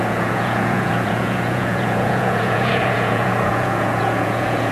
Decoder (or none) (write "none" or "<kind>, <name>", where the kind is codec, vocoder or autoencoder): vocoder, Vocos